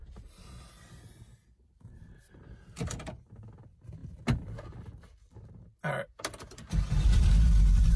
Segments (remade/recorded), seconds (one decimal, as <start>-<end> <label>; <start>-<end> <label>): 0.0-8.0 recorded